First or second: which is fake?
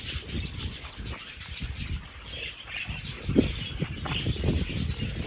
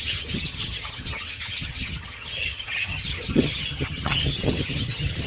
second